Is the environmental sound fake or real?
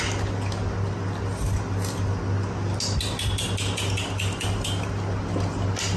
real